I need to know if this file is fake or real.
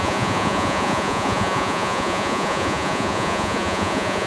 fake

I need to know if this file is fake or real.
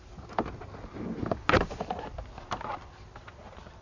real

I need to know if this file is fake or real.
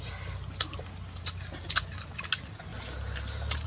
real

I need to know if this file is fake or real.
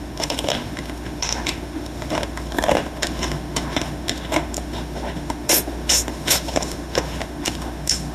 fake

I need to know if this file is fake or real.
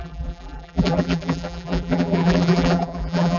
fake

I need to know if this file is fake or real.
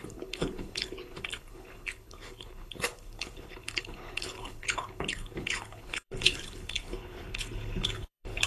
fake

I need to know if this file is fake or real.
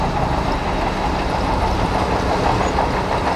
real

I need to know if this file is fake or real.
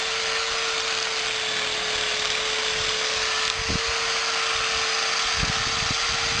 real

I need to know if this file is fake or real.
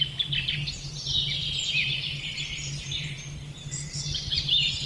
real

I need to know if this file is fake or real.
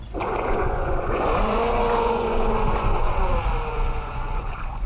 fake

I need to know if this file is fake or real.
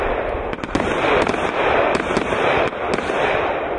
real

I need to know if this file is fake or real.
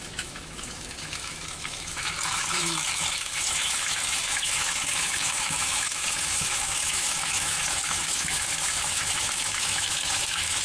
fake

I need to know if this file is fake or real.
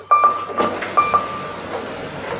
real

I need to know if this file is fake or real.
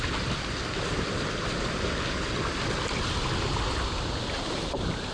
real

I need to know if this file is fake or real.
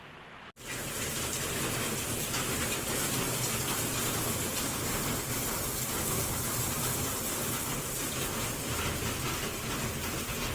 real